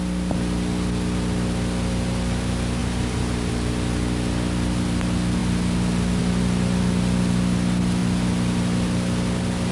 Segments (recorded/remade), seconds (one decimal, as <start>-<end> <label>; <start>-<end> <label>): 0.0-2.8 recorded; 2.8-3.5 remade; 3.5-9.7 recorded